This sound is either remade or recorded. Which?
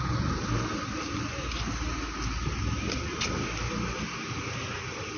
recorded